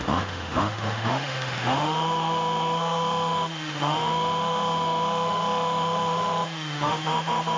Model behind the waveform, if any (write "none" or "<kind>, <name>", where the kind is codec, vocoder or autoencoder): autoencoder, DAC-VAE